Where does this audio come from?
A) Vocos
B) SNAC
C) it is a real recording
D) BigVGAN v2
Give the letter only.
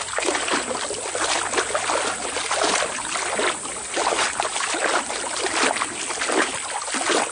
C